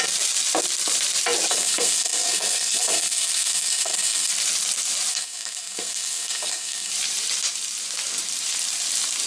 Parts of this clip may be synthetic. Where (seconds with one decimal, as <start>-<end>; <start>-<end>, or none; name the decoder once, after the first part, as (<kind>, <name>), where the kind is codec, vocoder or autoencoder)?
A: 1.5-4.3 (codec, SNAC); 5.1-6.9